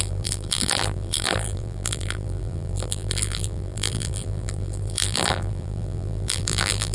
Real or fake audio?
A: fake